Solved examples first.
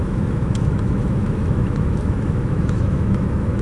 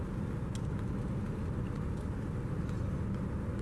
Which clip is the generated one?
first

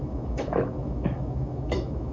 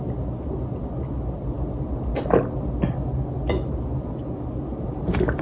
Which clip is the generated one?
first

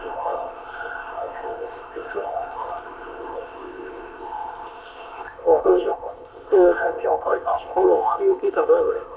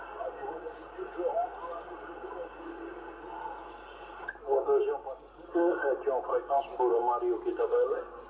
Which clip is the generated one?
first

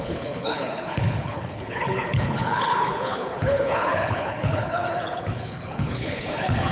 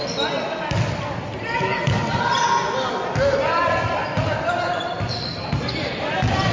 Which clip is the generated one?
first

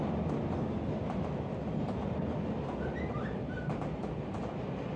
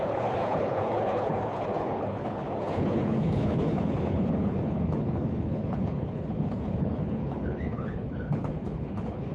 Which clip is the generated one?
second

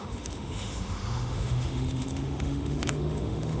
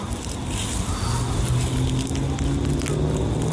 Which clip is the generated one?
first